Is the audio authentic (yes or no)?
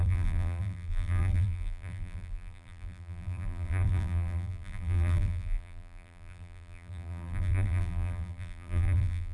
no